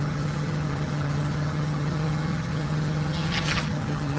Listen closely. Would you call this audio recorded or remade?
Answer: remade